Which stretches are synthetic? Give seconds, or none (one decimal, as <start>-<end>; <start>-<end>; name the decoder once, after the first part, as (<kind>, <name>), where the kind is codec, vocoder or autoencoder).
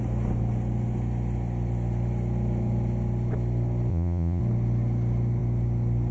3.9-4.4 (vocoder, Vocos)